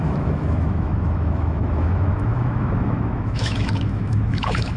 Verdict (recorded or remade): remade